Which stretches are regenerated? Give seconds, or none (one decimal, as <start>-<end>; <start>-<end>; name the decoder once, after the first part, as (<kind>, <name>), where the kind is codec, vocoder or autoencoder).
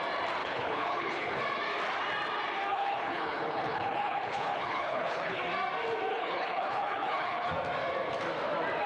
0.4-1.4 (codec, HILCodec); 2.7-5.4; 6.1-7.5